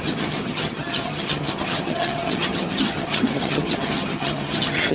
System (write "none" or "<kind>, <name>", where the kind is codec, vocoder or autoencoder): vocoder, HiFi-GAN